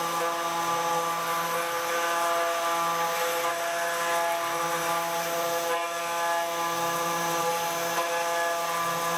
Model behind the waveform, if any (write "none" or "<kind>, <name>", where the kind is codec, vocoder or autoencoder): none